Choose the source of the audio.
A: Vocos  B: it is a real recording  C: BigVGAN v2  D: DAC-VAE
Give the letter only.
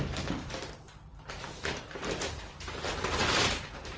C